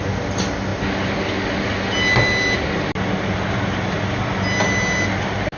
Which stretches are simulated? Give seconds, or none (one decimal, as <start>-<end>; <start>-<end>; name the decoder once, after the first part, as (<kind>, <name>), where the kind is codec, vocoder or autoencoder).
none